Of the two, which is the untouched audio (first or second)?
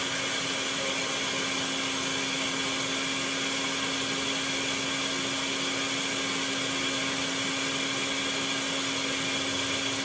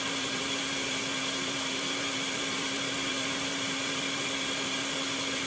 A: first